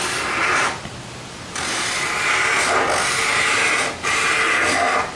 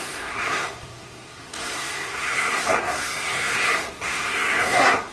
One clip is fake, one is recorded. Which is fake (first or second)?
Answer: second